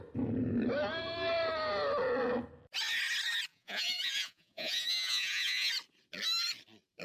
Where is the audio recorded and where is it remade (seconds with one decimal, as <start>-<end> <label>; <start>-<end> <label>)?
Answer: 0.0-3.5 recorded; 3.5-5.7 remade; 5.7-7.0 recorded